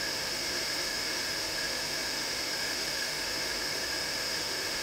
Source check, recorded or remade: remade